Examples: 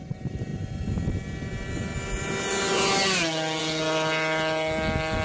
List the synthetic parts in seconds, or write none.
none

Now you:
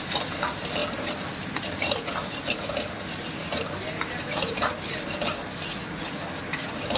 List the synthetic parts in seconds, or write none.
none

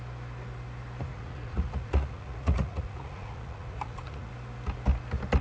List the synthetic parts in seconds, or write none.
1.1-4.3 (vocoder, Vocos)

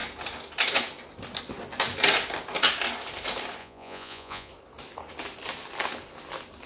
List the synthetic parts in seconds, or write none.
3.6-4.5 (vocoder, Vocos)

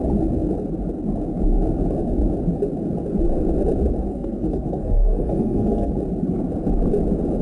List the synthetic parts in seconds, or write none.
4.1-5.9 (codec, SNAC)

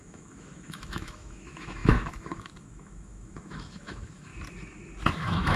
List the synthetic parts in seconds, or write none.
0.0-4.3 (autoencoder, DAC-VAE); 5.1-5.6

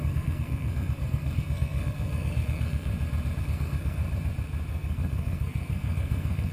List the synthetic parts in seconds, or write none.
0.0-2.9 (codec, SNAC); 3.4-4.0; 4.7-6.5